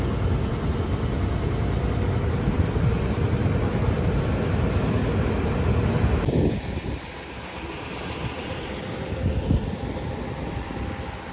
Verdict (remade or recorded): recorded